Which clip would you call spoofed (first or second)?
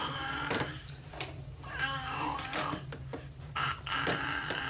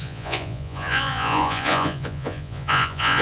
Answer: second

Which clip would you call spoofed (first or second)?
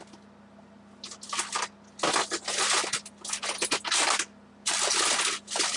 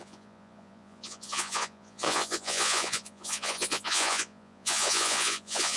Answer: second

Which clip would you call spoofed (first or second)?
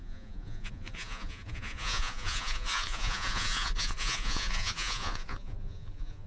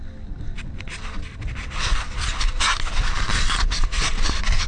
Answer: first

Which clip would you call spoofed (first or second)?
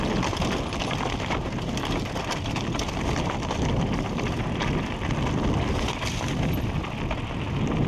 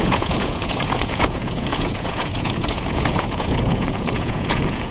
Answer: second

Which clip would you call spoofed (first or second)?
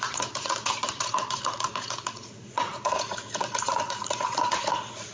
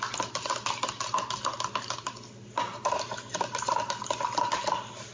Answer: first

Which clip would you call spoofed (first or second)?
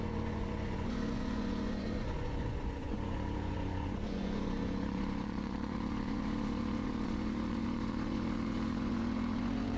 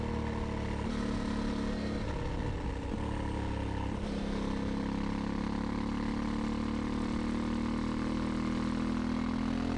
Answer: first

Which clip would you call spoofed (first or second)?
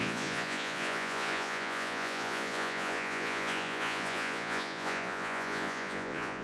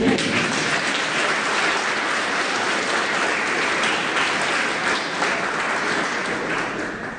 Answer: first